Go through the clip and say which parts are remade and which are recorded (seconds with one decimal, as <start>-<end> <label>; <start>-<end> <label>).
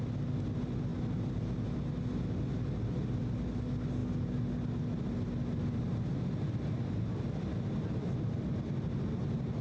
0.0-9.6 recorded